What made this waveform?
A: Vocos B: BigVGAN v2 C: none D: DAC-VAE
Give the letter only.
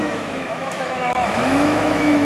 D